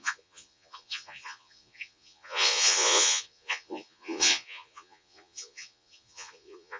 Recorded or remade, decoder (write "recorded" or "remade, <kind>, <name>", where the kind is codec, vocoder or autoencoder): remade, vocoder, Vocos